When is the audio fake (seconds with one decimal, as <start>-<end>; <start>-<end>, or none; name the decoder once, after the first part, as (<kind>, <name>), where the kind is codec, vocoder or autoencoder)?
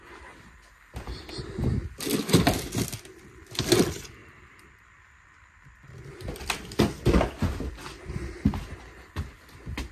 none